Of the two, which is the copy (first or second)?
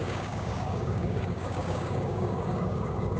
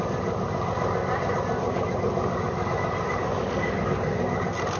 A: first